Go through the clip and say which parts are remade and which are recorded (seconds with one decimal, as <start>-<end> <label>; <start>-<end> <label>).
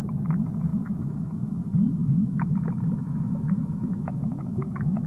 0.0-0.7 recorded; 0.7-1.6 remade; 1.6-2.0 recorded; 2.0-5.1 remade